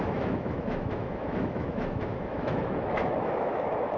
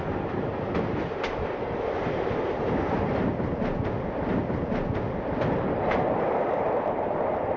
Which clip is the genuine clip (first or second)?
second